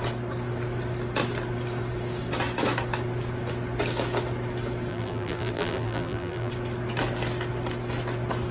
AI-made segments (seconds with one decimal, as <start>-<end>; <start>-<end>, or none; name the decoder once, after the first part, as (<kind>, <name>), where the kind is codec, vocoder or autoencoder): 4.9-6.5 (vocoder, BigVGAN v2)